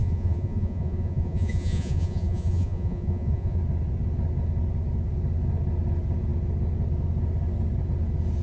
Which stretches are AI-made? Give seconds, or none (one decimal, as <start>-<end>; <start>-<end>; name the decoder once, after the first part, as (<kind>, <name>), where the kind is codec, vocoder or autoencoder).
0.0-3.6 (vocoder, Vocos)